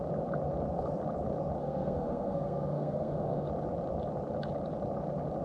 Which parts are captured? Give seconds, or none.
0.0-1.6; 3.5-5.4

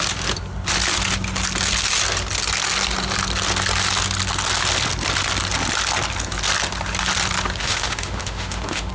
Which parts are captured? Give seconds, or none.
0.0-7.6

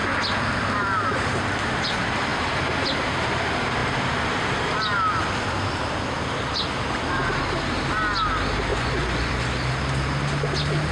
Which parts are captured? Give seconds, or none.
0.0-8.7; 9.3-10.9

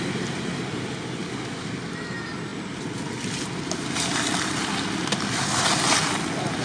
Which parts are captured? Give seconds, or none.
0.0-1.2; 1.9-6.6

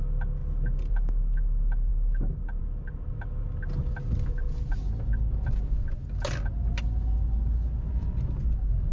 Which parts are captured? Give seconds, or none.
0.0-8.9